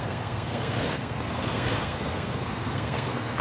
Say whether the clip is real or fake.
fake